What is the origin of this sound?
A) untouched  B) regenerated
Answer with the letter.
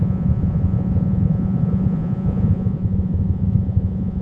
B